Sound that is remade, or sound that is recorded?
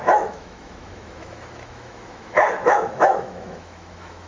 remade